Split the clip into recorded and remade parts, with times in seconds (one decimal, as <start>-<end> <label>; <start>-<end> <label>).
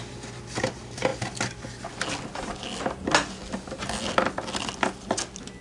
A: 0.0-5.6 recorded